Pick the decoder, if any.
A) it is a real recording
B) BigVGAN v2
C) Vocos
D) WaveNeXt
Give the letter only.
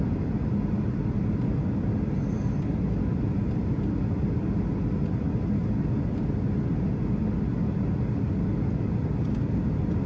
A